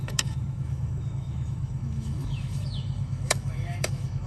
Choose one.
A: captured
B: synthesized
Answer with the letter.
B